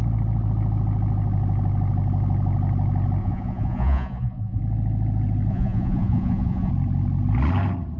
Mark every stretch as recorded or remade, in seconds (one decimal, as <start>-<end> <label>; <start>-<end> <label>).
0.0-3.2 recorded; 3.2-4.6 remade; 4.6-5.5 recorded; 5.5-6.7 remade; 6.7-8.0 recorded